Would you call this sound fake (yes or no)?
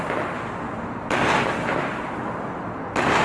no